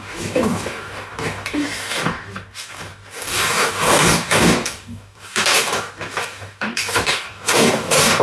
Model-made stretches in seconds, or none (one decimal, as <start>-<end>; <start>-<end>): 0.0-8.2